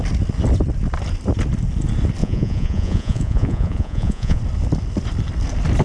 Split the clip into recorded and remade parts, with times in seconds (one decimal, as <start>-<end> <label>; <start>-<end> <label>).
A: 0.0-2.2 recorded; 2.2-4.4 remade; 4.4-5.8 recorded